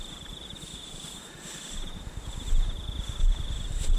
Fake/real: fake